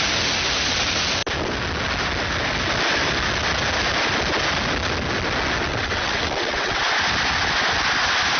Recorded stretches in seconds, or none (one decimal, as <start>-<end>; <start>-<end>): 0.0-5.7; 6.8-8.4